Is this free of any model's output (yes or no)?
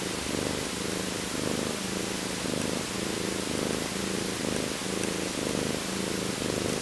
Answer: yes